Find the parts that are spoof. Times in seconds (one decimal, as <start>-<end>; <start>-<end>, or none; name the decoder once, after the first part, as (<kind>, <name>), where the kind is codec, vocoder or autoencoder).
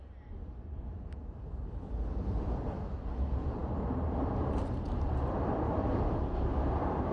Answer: none